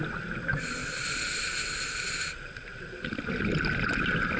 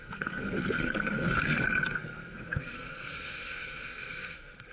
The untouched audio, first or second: first